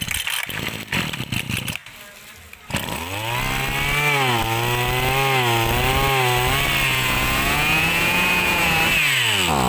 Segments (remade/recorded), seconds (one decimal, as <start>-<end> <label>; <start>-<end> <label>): 0.0-6.9 recorded; 6.9-8.8 remade; 8.8-9.7 recorded